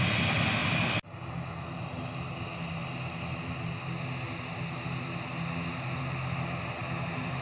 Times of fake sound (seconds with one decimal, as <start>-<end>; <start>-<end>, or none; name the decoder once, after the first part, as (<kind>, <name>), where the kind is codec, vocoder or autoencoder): none